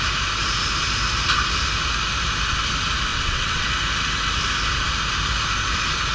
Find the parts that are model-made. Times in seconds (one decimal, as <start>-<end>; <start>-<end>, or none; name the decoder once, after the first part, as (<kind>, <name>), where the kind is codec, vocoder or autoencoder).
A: 3.1-3.6 (vocoder, WaveNeXt)